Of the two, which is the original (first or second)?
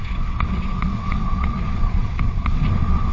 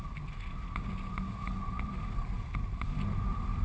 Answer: second